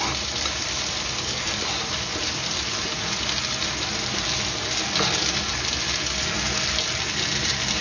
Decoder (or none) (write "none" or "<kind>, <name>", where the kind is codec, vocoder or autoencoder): none